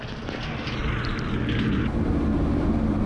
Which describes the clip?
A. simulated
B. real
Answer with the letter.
B